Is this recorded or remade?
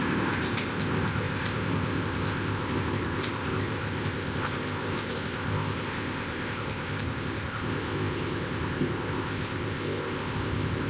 remade